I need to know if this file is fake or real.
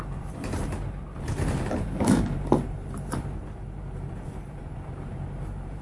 fake